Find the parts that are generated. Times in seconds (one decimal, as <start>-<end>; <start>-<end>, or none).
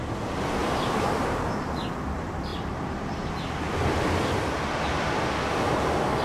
0.6-1.6; 2.5-3.2